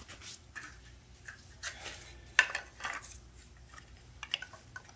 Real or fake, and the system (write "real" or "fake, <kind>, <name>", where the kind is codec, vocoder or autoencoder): real